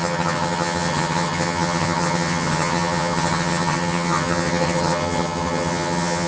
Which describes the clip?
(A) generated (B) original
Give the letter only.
A